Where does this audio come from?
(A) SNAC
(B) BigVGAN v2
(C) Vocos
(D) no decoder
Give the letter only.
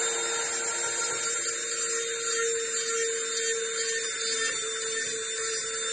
D